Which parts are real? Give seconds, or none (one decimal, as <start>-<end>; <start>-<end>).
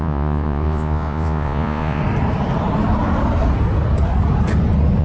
2.0-5.0